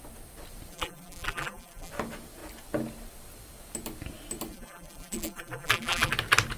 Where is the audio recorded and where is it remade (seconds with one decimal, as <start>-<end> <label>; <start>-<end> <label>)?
0.0-0.7 recorded; 0.7-1.9 remade; 1.9-4.5 recorded; 4.5-6.1 remade; 6.1-6.6 recorded